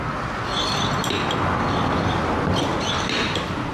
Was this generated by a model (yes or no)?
no